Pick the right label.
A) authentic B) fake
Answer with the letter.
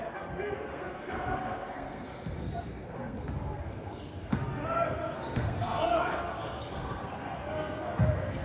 B